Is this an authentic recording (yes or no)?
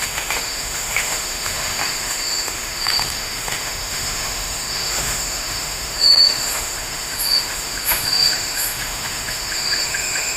no